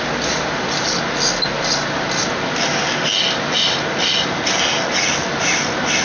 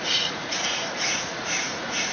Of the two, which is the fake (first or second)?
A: second